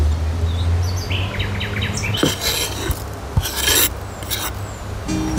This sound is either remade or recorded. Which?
recorded